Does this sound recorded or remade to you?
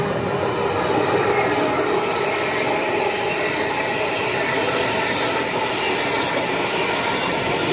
recorded